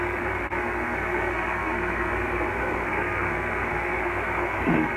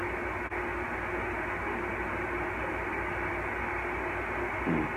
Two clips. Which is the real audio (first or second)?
second